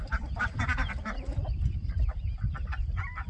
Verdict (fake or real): real